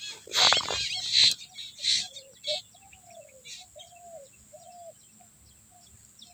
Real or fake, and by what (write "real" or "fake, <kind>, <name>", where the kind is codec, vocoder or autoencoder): real